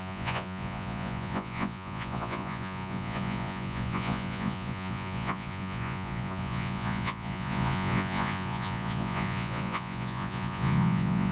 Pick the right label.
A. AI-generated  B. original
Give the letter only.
A